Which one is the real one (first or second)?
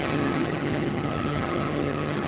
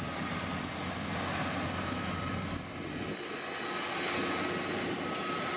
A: second